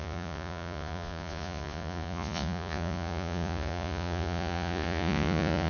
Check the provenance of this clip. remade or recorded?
remade